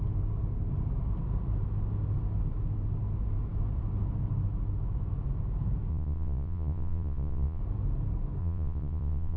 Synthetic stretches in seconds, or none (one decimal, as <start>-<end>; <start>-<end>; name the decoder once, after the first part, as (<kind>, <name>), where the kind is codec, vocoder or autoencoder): 5.9-7.6 (vocoder, Vocos); 8.4-9.4